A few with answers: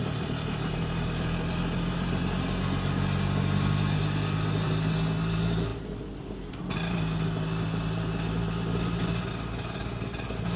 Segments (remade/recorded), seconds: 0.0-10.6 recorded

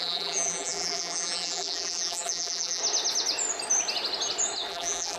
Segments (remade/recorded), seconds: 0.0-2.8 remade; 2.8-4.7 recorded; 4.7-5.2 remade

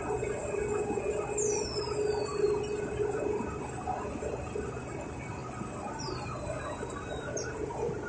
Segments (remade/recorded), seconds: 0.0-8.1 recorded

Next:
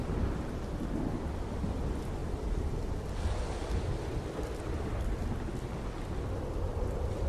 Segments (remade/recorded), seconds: 0.0-7.3 recorded

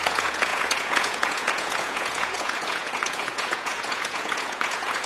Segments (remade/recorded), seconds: 0.0-5.1 remade

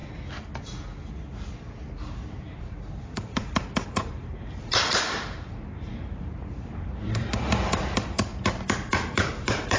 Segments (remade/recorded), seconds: 0.0-2.6 recorded; 2.6-8.3 remade; 8.3-8.9 recorded; 8.9-9.8 remade